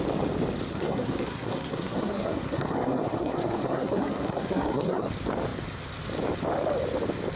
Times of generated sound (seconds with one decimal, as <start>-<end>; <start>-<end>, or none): 0.7-5.1